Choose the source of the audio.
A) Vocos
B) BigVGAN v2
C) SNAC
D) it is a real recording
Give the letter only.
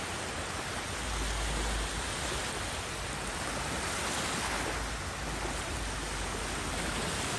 D